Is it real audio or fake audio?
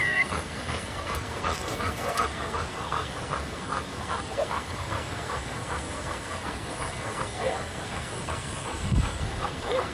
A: fake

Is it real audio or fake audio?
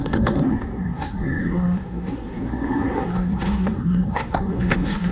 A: fake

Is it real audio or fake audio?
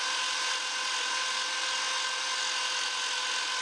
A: real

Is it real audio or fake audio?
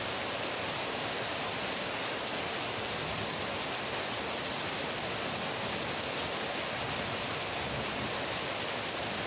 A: real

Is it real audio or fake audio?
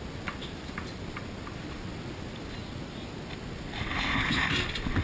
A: real